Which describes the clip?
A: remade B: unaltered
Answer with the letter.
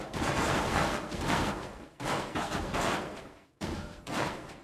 A